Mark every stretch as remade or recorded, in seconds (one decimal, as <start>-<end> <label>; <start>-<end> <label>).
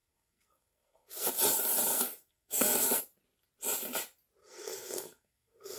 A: 0.0-1.3 remade; 1.3-1.9 recorded; 1.9-3.0 remade; 3.0-4.4 recorded; 4.4-5.8 remade